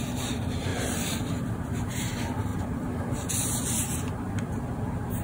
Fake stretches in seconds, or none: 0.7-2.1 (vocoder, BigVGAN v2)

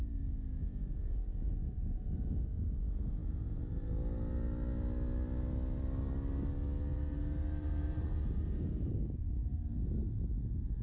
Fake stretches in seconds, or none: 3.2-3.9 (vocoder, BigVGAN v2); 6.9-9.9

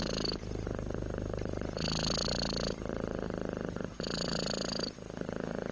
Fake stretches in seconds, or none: none

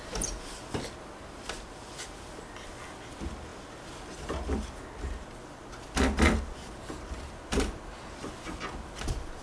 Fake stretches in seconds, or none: none

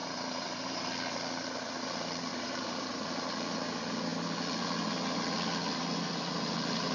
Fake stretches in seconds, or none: 0.0-0.9 (vocoder, BigVGAN v2); 2.3-2.9

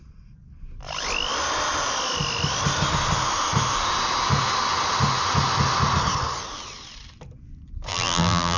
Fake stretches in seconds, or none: 7.9-8.6 (vocoder, BigVGAN v2)